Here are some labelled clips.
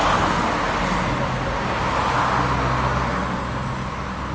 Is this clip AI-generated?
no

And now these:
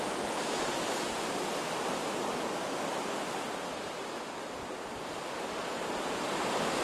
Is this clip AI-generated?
no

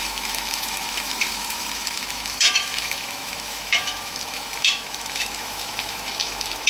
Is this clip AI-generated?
yes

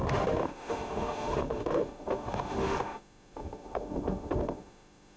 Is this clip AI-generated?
yes